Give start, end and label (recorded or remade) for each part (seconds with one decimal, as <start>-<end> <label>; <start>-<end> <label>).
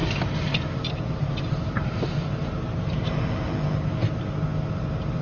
0.0-3.1 remade; 3.1-5.2 recorded